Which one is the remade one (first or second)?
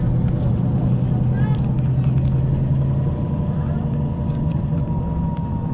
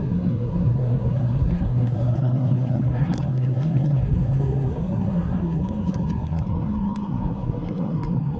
second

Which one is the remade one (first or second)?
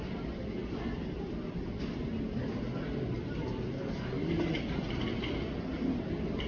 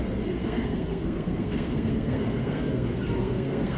second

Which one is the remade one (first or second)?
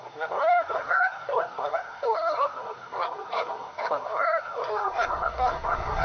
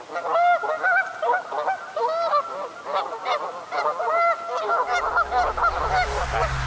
first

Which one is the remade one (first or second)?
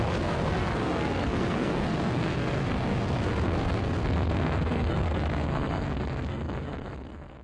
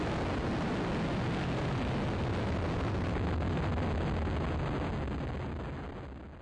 first